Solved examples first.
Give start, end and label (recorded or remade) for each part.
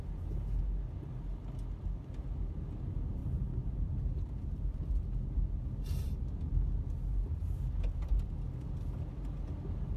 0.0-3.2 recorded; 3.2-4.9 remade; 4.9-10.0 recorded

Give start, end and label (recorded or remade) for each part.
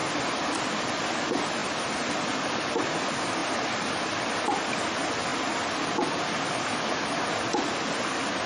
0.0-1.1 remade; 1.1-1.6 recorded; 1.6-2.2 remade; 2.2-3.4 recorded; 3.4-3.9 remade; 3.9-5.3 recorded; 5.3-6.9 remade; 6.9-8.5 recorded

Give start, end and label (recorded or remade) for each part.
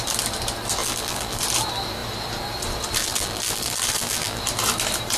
0.0-0.8 recorded; 0.8-1.4 remade; 1.4-3.0 recorded; 3.0-4.4 remade; 4.4-5.2 recorded